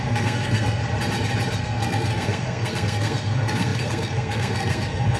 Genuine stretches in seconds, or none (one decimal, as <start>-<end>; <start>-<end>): 0.8-1.6